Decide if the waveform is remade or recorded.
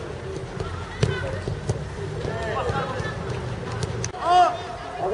recorded